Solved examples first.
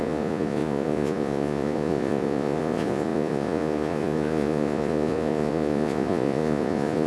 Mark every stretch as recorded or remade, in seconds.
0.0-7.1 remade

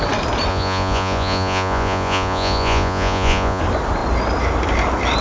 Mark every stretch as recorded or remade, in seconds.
0.0-0.5 recorded; 0.5-3.6 remade; 3.6-5.2 recorded

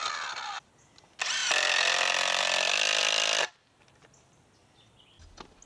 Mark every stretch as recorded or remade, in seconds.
0.0-5.7 recorded

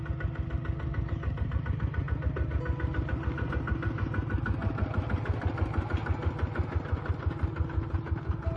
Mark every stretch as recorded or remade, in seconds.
0.0-8.6 recorded

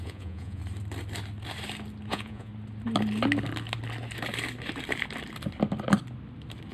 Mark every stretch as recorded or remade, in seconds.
0.0-0.6 remade; 0.6-2.1 recorded; 2.1-2.5 remade; 2.5-6.7 recorded

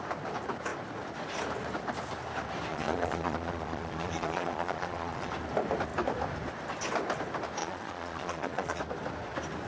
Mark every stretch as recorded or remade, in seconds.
0.0-2.7 recorded; 2.7-5.3 remade; 5.3-7.6 recorded; 7.6-8.8 remade; 8.8-9.7 recorded